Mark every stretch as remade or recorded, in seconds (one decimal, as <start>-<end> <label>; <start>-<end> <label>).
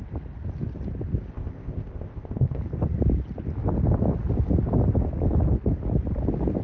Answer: 0.0-1.3 recorded; 1.3-2.6 remade; 2.6-6.6 recorded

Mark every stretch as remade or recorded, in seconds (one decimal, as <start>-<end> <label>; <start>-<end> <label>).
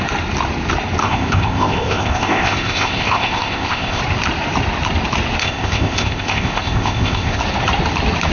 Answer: 0.0-1.0 recorded; 1.0-4.0 remade; 4.0-5.4 recorded; 5.4-7.4 remade; 7.4-8.3 recorded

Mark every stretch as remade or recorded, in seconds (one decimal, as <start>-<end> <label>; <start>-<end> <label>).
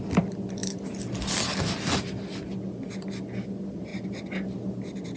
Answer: 0.0-5.2 recorded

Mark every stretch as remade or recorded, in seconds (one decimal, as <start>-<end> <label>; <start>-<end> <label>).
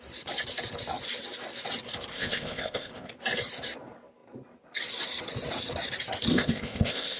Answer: 0.0-2.1 recorded; 2.1-3.1 remade; 3.1-6.3 recorded; 6.3-7.2 remade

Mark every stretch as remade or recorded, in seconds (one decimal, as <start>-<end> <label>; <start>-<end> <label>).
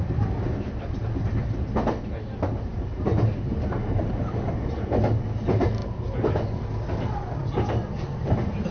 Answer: 0.0-8.7 recorded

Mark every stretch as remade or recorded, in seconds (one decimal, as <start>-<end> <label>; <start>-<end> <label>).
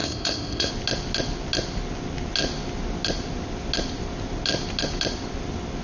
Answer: 0.0-0.7 remade; 0.7-5.8 recorded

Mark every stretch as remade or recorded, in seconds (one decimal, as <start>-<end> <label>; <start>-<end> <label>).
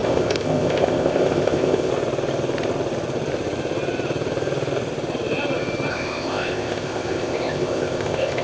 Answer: 0.0-1.9 remade; 1.9-5.9 recorded; 5.9-8.4 remade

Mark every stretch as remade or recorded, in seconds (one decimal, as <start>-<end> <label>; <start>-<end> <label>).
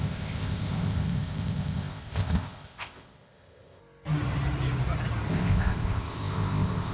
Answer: 0.0-3.8 remade; 3.8-5.3 recorded; 5.3-6.9 remade